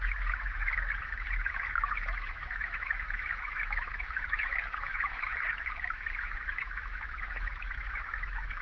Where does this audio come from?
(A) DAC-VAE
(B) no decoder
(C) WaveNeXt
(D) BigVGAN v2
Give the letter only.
A